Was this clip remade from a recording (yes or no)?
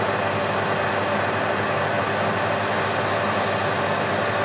no